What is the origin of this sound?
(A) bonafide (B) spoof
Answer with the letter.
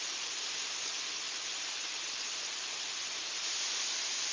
A